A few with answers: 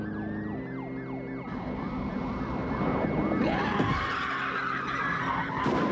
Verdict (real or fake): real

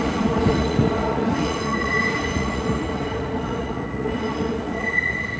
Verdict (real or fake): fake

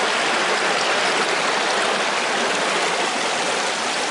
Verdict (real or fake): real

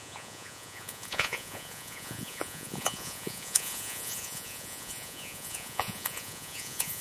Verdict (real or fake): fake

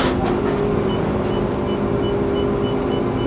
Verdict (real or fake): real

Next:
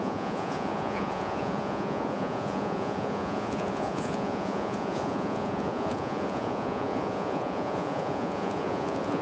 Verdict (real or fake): fake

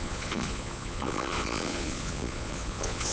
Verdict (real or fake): fake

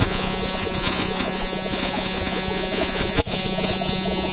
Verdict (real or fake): fake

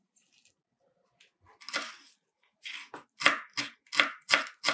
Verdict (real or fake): real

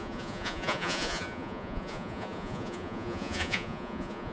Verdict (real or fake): fake